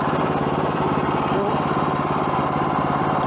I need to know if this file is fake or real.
fake